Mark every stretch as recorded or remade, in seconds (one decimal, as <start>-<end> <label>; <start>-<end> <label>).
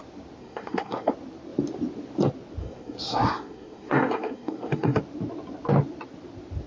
0.0-0.4 recorded; 0.4-1.1 remade; 1.1-2.6 recorded; 2.6-5.0 remade; 5.0-6.7 recorded